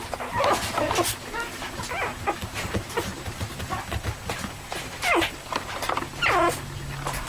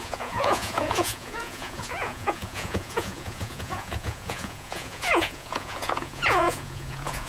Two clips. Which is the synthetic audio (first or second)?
second